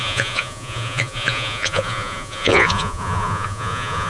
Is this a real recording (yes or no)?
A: no